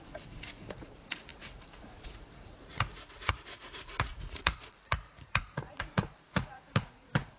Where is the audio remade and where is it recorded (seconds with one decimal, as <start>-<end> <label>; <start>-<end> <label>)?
0.0-7.4 remade

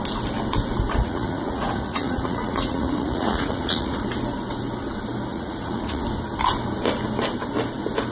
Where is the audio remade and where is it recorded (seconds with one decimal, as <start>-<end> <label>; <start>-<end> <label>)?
0.0-1.0 recorded; 1.0-4.0 remade; 4.0-5.3 recorded; 5.3-6.0 remade; 6.0-8.1 recorded

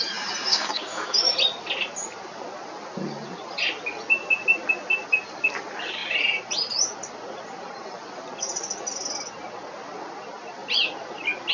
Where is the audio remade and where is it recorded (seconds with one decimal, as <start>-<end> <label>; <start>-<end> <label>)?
0.0-0.5 recorded; 0.5-1.3 remade; 1.3-11.5 recorded

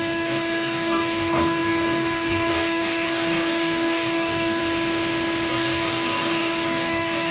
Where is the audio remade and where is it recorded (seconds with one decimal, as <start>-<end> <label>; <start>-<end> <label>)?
0.0-4.6 remade; 4.6-5.5 recorded; 5.5-7.3 remade

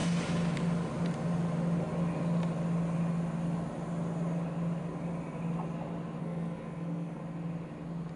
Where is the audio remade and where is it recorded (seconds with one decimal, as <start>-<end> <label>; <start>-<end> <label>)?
0.0-6.2 recorded; 6.2-7.2 remade; 7.2-8.2 recorded